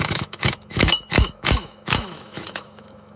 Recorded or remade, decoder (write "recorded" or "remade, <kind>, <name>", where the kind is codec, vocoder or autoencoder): remade, autoencoder, DAC-VAE